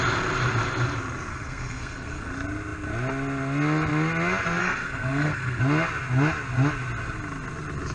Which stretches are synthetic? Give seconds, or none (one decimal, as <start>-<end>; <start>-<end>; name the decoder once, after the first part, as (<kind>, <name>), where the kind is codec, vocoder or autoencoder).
1.3-2.3 (codec, SNAC); 4.6-5.6